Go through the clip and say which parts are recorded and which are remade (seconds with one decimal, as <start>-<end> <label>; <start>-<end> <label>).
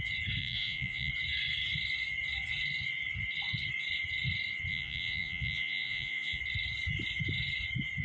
0.0-0.4 recorded; 0.4-1.1 remade; 1.1-4.7 recorded; 4.7-6.4 remade; 6.4-8.0 recorded